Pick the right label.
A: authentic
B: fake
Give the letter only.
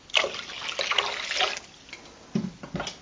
A